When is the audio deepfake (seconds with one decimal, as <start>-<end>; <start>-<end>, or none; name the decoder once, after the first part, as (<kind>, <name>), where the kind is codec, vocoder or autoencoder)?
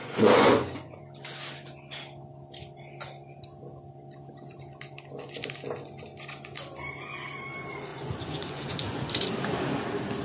0.0-1.0 (vocoder, Vocos); 7.9-9.1